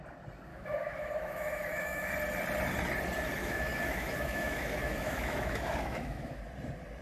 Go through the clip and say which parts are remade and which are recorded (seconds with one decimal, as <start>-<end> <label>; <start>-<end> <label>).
0.0-0.5 recorded; 0.5-2.1 remade; 2.1-3.4 recorded; 3.4-6.4 remade; 6.4-7.0 recorded

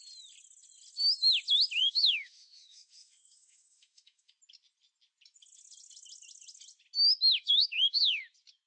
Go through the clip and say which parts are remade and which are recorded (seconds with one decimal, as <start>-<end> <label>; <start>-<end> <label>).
0.0-1.8 recorded; 1.8-4.3 remade; 4.3-7.4 recorded; 7.4-8.2 remade; 8.2-8.7 recorded